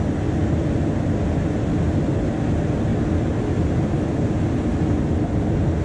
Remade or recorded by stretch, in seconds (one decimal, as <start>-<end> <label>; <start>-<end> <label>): 0.0-5.8 recorded